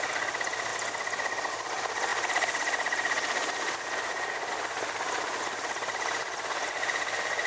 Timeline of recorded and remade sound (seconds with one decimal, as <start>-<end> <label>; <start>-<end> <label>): 0.0-7.5 recorded